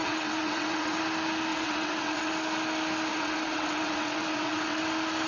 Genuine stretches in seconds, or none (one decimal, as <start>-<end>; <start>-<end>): 1.0-1.5; 2.3-3.1; 4.8-5.3